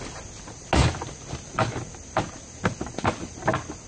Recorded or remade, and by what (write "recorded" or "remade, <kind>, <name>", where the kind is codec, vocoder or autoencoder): recorded